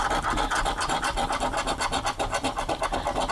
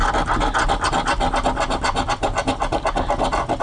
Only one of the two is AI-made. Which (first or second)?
first